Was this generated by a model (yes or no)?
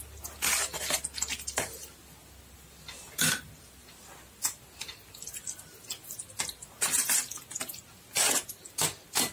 no